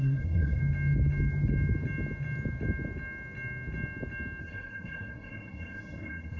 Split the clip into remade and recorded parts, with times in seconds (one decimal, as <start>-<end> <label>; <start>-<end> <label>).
0.0-0.6 remade; 0.6-4.4 recorded; 4.4-6.4 remade